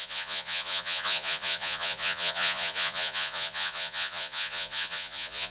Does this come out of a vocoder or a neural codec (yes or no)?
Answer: yes